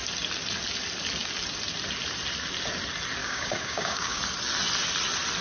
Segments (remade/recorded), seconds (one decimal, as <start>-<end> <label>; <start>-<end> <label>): 0.0-3.2 recorded; 3.2-4.2 remade; 4.2-5.4 recorded